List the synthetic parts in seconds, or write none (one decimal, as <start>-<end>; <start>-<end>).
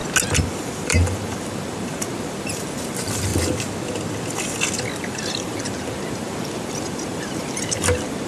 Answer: 0.6-3.3; 5.0-8.3